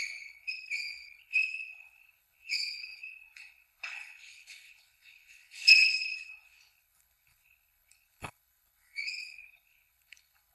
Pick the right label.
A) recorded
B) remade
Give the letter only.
B